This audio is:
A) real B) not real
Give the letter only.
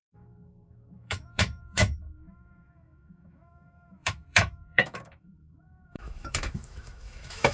B